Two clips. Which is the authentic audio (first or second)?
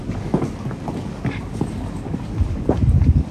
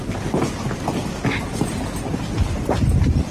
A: second